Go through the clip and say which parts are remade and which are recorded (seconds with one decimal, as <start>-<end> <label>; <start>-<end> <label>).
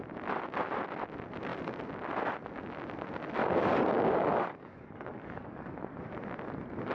0.0-3.4 recorded; 3.4-5.8 remade; 5.8-6.9 recorded